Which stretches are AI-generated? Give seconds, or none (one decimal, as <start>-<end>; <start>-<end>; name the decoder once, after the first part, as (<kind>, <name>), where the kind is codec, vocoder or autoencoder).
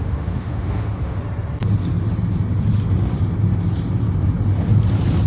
0.0-1.2 (autoencoder, DAC-VAE)